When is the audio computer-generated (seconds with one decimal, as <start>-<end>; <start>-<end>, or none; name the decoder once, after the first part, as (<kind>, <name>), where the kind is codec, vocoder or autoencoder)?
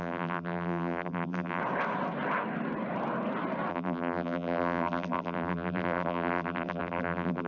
0.0-1.6 (vocoder, BigVGAN v2); 3.7-7.5